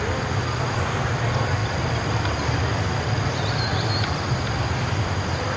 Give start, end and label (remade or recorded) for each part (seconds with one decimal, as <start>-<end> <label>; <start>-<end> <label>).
0.0-5.6 recorded